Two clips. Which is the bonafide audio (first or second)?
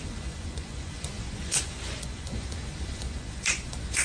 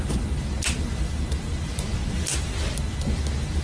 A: second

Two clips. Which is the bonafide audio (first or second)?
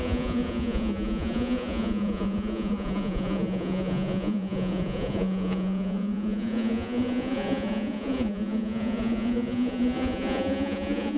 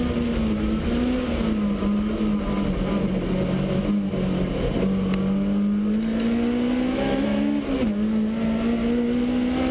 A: second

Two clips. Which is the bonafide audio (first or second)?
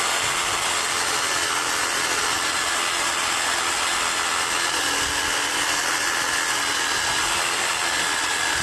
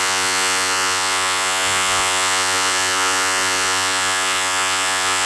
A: first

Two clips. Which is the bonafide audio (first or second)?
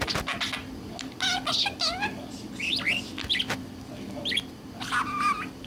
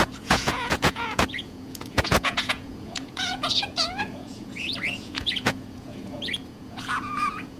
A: first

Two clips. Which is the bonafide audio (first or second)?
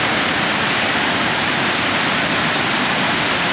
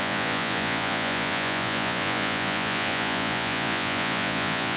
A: first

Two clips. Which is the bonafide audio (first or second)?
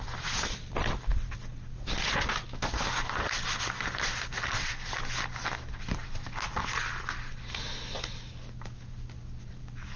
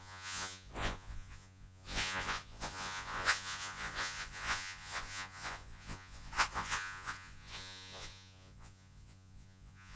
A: first